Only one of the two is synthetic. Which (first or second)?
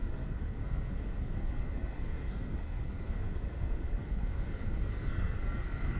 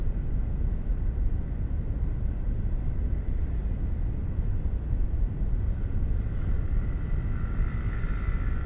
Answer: first